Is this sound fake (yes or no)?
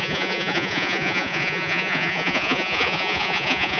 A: yes